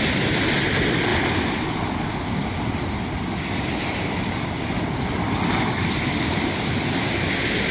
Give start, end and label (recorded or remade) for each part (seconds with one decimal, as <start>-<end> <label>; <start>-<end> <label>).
0.0-7.7 recorded